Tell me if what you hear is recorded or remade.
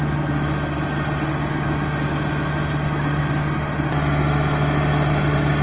recorded